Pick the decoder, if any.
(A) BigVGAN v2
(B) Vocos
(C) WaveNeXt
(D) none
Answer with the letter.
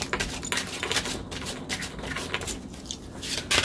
D